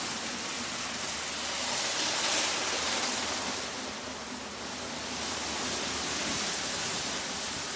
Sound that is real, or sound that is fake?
real